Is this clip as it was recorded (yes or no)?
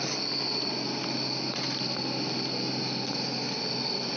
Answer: yes